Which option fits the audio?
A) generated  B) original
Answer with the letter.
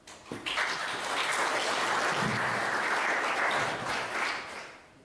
B